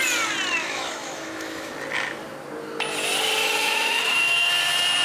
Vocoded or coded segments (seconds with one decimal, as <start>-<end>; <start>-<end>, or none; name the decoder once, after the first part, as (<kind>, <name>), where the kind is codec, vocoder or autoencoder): 0.6-1.7 (autoencoder, DAC-VAE); 3.4-4.5